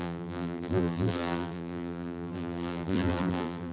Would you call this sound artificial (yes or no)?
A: yes